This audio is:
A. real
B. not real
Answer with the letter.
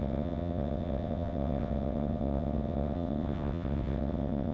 B